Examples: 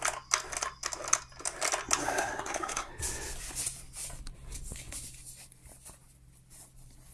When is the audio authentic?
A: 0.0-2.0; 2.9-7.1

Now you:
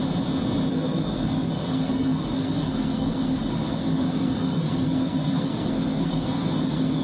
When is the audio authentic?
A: 0.0-0.7

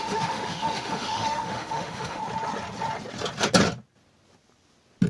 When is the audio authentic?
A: 2.2-5.1